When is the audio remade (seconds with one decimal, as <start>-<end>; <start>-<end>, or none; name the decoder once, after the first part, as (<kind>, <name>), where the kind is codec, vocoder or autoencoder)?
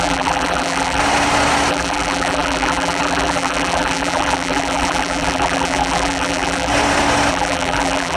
0.0-1.0 (vocoder, BigVGAN v2); 1.7-6.7; 7.3-8.2